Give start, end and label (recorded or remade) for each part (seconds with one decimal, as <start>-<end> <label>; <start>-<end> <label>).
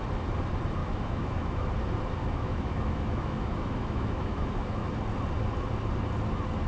0.0-0.8 recorded; 0.8-1.7 remade; 1.7-2.2 recorded; 2.2-4.9 remade; 4.9-6.7 recorded